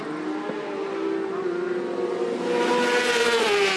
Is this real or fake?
real